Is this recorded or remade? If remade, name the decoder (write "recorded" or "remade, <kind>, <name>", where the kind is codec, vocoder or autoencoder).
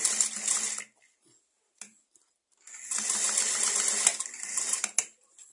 recorded